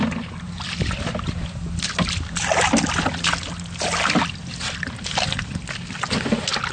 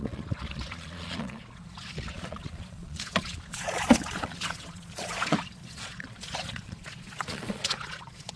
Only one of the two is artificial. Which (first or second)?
second